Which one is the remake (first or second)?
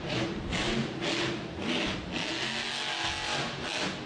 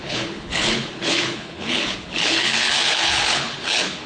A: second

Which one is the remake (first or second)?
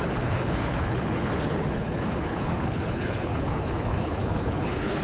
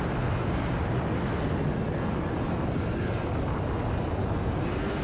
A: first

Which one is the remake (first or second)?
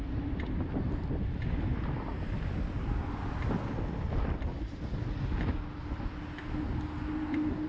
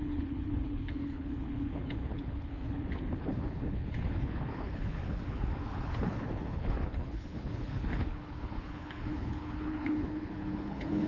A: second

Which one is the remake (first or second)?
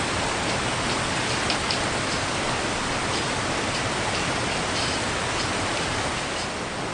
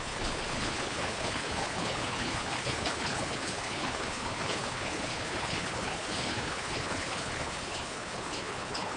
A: second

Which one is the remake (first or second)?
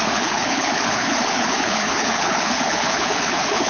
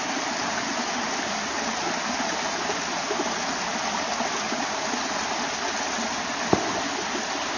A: first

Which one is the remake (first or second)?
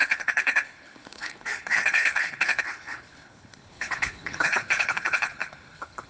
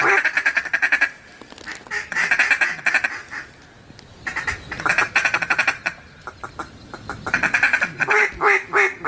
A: first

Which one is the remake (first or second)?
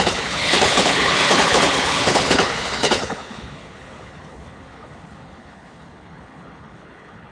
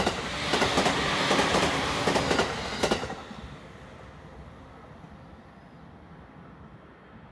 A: first